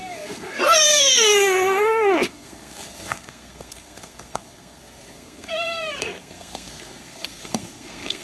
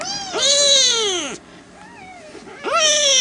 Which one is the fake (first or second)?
first